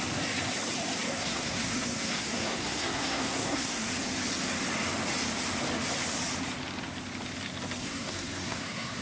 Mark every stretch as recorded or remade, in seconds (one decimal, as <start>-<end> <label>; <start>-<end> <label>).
0.0-1.1 recorded; 1.1-3.9 remade; 3.9-7.8 recorded; 7.8-9.0 remade